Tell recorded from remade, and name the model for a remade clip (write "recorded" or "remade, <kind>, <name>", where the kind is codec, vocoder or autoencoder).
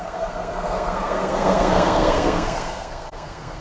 remade, codec, SNAC